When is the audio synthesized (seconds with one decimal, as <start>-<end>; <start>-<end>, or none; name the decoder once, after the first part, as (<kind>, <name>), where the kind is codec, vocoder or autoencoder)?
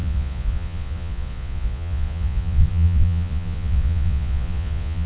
0.0-5.1 (vocoder, Vocos)